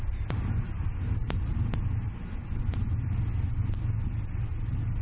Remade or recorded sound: recorded